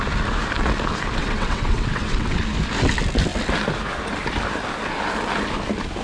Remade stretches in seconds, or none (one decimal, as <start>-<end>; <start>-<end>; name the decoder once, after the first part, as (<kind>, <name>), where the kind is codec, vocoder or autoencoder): 1.2-2.4 (vocoder, WaveNeXt)